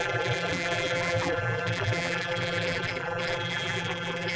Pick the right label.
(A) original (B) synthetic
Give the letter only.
B